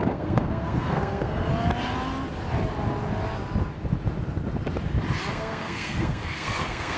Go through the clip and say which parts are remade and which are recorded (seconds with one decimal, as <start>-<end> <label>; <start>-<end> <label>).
0.0-1.5 remade; 1.5-5.3 recorded; 5.3-7.0 remade